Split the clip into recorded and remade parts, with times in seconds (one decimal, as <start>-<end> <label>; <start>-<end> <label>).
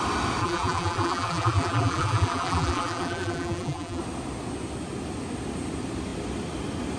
0.0-0.4 recorded; 0.4-4.0 remade; 4.0-7.0 recorded